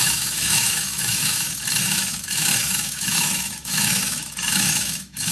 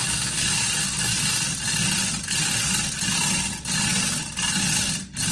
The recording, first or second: second